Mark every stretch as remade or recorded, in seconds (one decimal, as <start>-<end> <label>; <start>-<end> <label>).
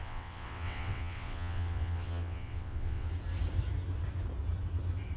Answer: 0.0-3.1 remade; 3.1-5.2 recorded